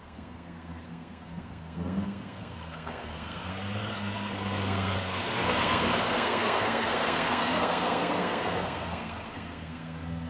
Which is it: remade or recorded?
remade